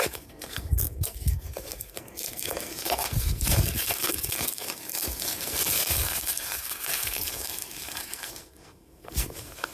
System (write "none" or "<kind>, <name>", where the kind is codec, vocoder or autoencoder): codec, SNAC